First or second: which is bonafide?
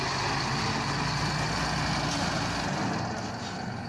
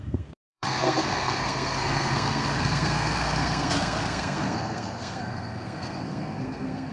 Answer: first